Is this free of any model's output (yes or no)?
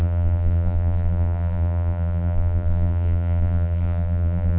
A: no